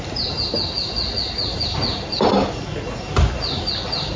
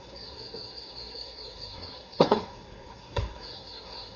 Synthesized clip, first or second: second